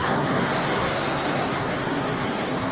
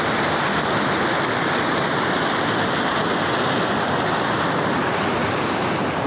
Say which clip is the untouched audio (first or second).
second